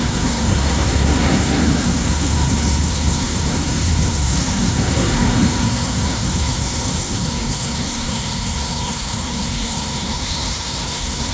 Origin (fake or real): fake